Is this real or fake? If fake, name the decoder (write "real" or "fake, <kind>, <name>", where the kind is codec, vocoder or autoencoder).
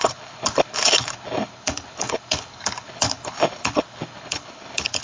fake, codec, HILCodec